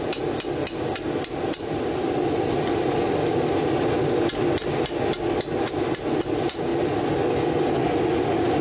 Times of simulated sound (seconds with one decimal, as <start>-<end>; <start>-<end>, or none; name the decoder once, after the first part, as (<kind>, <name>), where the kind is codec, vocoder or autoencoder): none